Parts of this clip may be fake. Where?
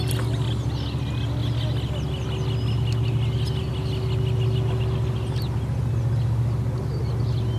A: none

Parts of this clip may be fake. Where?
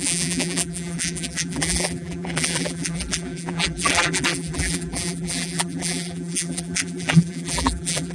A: 0.0-8.1 (vocoder, BigVGAN v2)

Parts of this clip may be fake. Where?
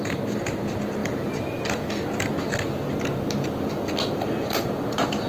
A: none